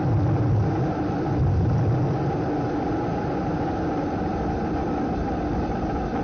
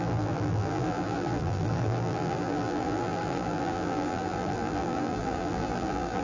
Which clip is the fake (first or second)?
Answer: second